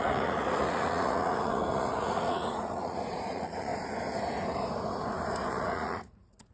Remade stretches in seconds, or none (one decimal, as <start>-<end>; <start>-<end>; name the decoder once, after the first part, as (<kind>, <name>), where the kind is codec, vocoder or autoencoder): 0.0-3.7 (vocoder, Vocos); 5.5-6.5